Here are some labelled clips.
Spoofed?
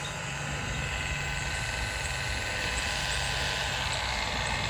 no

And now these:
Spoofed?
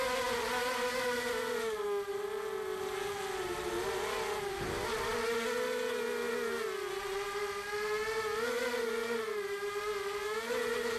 no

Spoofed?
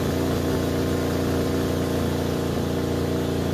no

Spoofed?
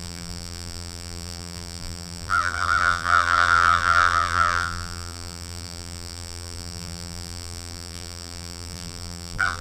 yes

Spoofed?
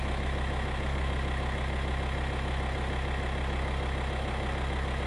no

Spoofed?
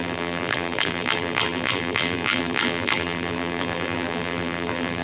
yes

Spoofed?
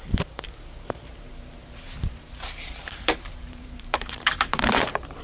yes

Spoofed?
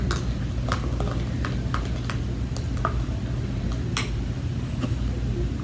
no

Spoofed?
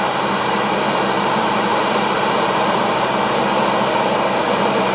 yes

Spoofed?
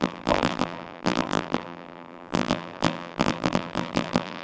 yes